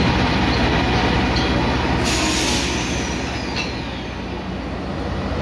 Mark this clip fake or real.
real